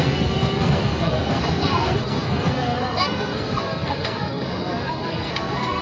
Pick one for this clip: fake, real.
fake